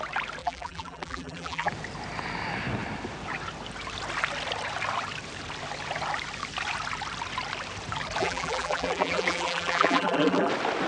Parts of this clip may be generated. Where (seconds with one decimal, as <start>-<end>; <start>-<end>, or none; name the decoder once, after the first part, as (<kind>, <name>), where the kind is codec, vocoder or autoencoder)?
0.4-1.7 (vocoder, BigVGAN v2); 8.2-10.5